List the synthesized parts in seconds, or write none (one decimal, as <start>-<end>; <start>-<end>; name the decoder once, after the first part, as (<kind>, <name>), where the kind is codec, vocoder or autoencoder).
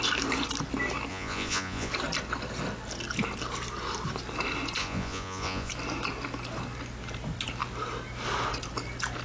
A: 1.1-1.9 (vocoder, Vocos); 4.8-5.7